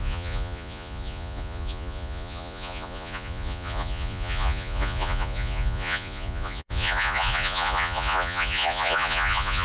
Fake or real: fake